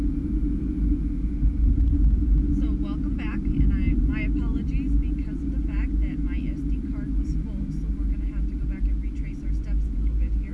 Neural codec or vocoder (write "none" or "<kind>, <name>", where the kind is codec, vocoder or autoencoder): none